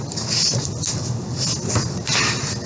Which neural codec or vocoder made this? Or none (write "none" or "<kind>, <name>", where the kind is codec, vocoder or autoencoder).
none